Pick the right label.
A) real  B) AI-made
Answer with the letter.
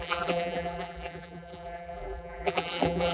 B